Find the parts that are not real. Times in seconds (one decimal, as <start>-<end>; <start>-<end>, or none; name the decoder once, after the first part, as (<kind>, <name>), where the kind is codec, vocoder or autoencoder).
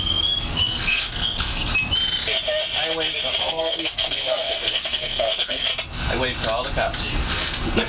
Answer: 0.0-1.7 (codec, SNAC); 3.4-5.7; 7.1-7.9